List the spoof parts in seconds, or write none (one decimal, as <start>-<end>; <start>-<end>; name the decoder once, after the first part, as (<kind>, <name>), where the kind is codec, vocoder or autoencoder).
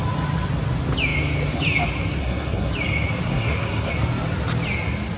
2.2-2.7 (codec, SNAC); 3.3-3.9